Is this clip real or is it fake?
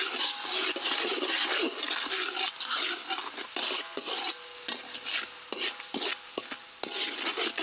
real